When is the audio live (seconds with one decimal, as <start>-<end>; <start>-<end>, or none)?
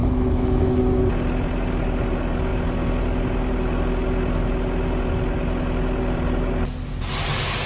0.8-7.7